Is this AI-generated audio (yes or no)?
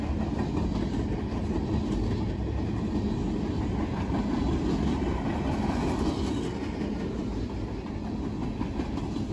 no